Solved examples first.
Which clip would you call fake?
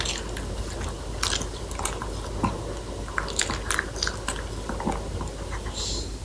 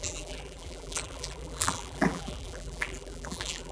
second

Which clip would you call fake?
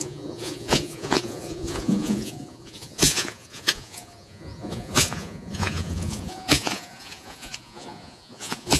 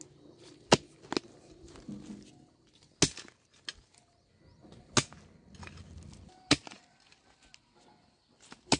first